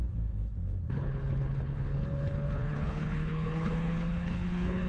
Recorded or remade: remade